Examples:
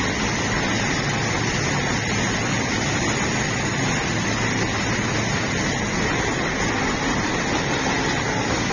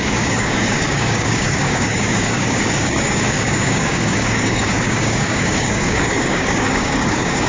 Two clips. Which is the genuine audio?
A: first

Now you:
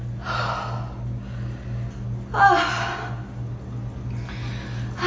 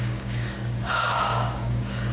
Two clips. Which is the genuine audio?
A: first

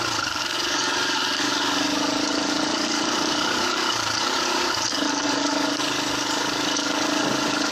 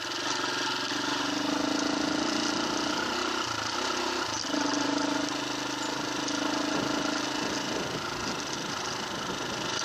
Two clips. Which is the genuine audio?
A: second